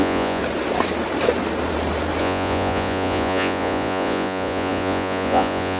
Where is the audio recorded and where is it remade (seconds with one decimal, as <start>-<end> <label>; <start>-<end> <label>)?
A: 0.0-0.4 remade; 0.4-2.2 recorded; 2.2-5.8 remade